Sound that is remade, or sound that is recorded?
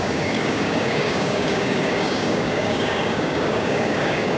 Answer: remade